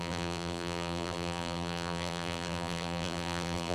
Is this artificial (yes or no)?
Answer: yes